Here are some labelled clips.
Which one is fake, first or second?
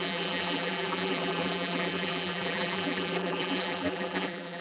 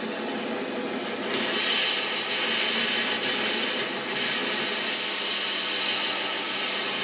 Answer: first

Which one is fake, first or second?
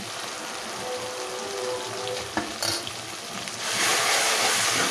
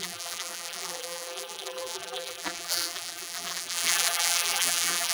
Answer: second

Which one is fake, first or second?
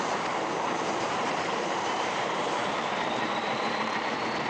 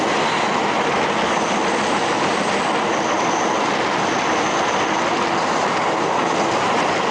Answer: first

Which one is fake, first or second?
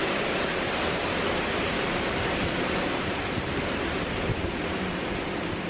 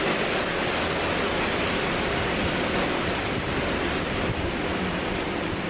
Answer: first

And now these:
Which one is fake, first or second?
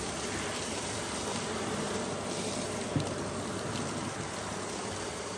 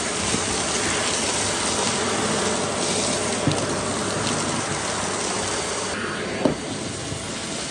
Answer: first